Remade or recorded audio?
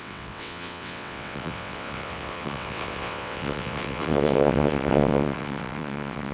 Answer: remade